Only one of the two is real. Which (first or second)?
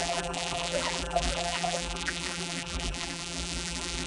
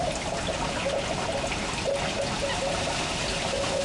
second